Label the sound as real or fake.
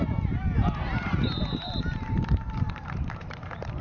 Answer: fake